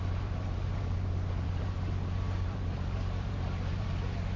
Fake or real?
fake